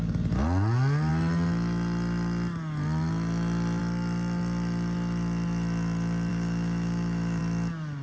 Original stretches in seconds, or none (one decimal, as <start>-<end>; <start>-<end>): 0.0-6.3; 7.4-8.0